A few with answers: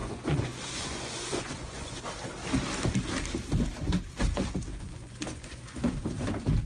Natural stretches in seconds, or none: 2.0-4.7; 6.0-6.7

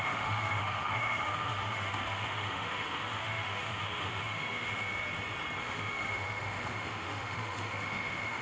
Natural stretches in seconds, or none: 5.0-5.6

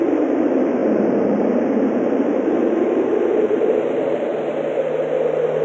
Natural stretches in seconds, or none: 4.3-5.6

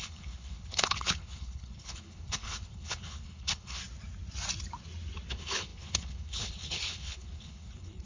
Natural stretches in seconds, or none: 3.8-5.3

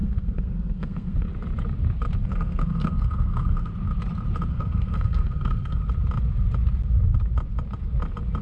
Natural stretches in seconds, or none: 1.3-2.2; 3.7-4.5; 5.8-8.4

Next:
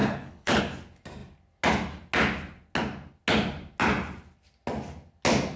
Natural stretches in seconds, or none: 0.6-5.6